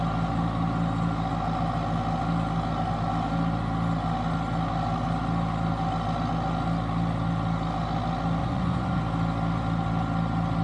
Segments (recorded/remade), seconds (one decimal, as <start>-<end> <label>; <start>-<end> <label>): 0.0-8.4 recorded; 8.4-9.0 remade; 9.0-10.6 recorded